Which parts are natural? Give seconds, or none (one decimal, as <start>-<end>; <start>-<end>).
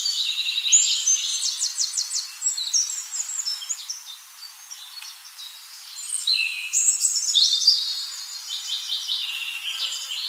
0.0-10.3